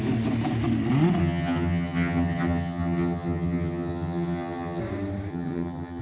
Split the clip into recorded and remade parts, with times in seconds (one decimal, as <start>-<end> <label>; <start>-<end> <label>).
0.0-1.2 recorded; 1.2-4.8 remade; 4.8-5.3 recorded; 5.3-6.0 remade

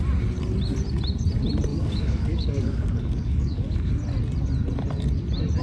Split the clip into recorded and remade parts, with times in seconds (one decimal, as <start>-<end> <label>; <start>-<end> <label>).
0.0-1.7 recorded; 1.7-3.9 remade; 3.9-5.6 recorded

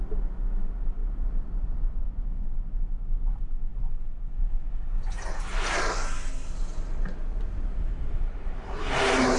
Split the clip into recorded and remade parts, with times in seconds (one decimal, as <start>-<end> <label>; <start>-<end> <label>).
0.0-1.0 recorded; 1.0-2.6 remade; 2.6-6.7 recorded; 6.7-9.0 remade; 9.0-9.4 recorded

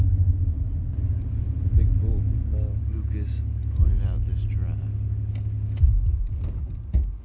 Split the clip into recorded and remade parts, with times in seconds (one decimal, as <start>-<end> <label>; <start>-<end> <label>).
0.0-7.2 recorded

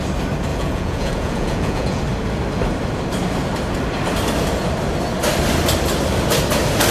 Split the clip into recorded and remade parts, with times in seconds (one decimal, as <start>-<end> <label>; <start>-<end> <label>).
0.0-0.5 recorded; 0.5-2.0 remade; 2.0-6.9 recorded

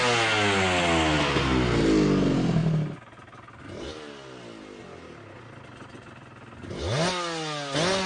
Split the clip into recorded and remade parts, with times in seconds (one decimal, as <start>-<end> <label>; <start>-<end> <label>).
0.0-8.1 recorded